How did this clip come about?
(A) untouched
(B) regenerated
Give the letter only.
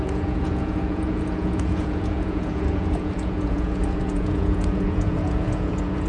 B